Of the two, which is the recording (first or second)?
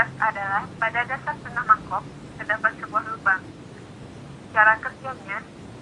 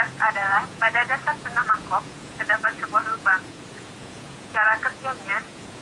first